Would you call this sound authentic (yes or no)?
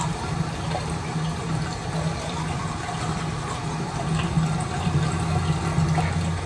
yes